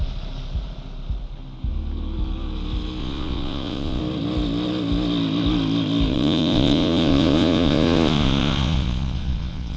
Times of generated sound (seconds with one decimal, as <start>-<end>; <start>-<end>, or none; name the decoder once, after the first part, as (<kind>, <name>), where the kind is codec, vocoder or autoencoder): 3.0-4.0 (vocoder, Vocos); 6.1-9.8